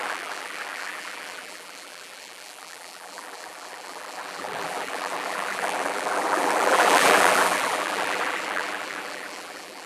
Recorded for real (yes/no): no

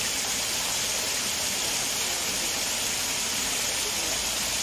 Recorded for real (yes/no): yes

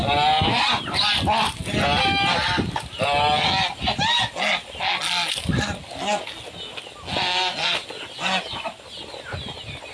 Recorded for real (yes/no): yes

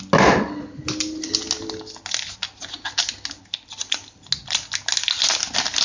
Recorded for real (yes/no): yes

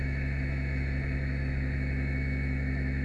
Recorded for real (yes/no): no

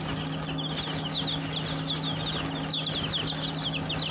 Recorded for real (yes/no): yes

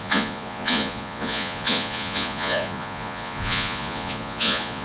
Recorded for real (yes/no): no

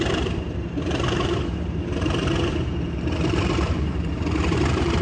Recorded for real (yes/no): no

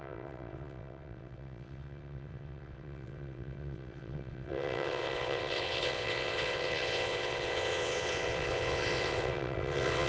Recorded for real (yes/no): no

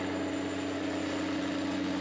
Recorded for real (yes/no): yes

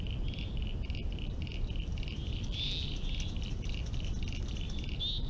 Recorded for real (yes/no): yes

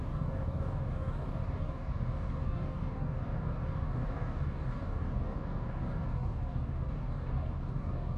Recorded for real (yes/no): no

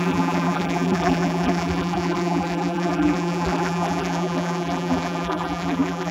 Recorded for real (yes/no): no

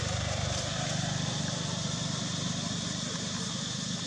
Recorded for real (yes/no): yes